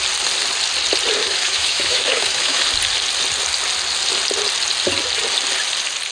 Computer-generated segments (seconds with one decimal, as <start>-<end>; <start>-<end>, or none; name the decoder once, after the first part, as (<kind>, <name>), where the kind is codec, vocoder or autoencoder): 1.2-2.6 (autoencoder, DAC-VAE)

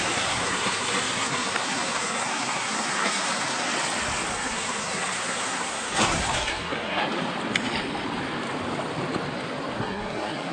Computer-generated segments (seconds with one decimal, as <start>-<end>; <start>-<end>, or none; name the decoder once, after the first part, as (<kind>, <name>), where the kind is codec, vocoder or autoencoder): 0.0-3.7 (codec, SNAC); 4.3-7.0; 9.8-10.5

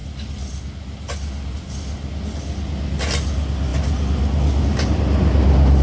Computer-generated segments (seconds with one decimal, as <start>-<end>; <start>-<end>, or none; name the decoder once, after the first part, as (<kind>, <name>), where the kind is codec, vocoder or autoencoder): none

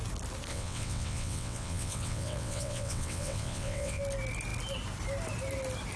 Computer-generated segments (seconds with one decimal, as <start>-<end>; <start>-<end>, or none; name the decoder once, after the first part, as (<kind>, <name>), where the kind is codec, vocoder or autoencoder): 0.5-4.0 (vocoder, WaveNeXt)

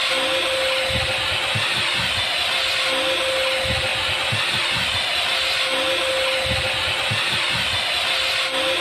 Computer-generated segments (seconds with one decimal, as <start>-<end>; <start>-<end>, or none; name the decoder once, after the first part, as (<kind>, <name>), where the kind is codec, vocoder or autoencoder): none

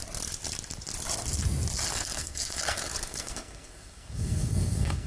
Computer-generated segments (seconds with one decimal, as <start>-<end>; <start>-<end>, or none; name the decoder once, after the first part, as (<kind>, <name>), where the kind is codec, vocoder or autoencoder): 1.9-5.1 (codec, SNAC)

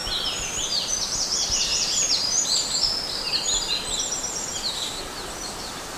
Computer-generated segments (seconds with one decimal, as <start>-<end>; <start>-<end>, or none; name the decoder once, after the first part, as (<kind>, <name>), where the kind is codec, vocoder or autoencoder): 0.6-1.7 (vocoder, BigVGAN v2); 5.3-6.0

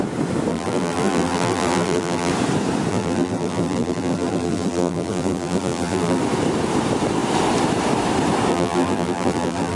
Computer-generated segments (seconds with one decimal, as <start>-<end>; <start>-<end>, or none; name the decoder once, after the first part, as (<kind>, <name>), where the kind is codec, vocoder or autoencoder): 0.5-2.3 (vocoder, BigVGAN v2); 2.9-6.2; 8.5-9.8